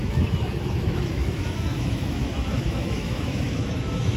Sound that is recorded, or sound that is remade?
remade